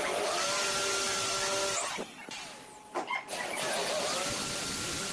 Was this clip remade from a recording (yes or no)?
no